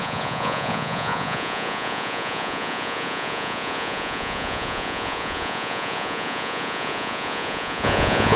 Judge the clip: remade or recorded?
remade